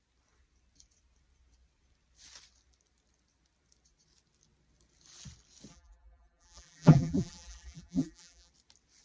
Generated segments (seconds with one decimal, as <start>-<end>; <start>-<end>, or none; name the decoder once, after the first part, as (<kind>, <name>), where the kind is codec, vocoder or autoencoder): 5.7-8.5 (vocoder, BigVGAN v2)